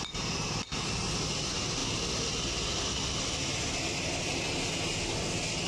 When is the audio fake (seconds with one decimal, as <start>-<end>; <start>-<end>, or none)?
none